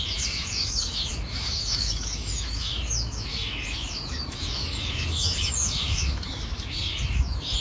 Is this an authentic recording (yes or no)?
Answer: no